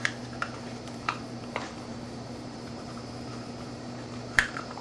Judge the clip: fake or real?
fake